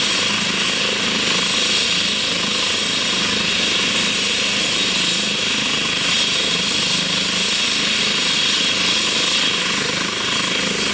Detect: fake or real real